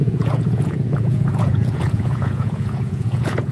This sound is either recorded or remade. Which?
remade